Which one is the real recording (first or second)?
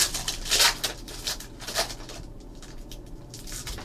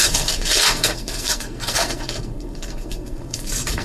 first